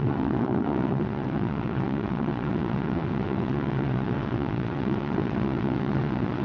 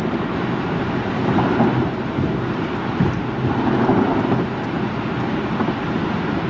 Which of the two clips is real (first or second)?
second